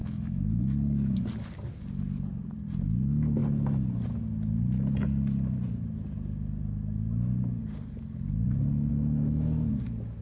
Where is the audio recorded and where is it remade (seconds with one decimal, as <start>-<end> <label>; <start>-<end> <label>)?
0.0-0.6 remade; 0.6-8.9 recorded; 8.9-9.7 remade; 9.7-10.2 recorded